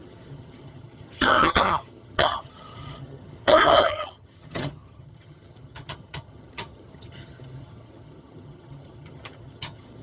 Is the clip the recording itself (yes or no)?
no